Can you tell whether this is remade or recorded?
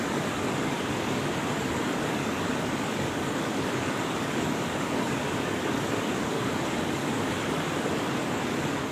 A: remade